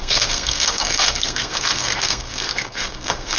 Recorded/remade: remade